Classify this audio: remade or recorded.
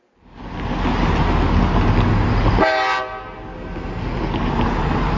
recorded